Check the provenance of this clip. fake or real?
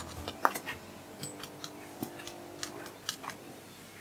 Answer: real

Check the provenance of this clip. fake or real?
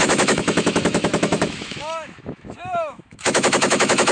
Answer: fake